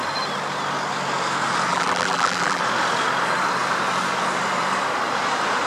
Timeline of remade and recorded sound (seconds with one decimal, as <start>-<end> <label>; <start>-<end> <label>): 0.0-1.7 recorded; 1.7-2.6 remade; 2.6-5.7 recorded